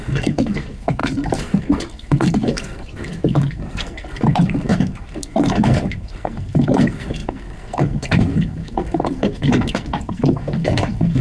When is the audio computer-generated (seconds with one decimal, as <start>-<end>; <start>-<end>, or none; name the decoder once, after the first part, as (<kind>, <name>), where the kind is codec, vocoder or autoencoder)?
0.0-11.2 (codec, SNAC)